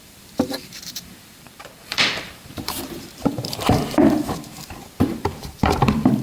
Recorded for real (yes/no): no